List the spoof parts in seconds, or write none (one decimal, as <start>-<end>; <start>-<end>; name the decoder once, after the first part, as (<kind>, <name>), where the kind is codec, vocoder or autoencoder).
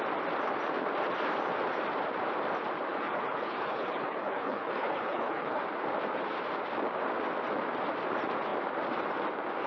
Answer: 2.9-5.6 (codec, HILCodec)